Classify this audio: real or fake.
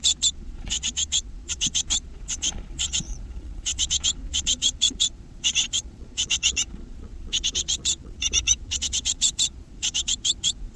fake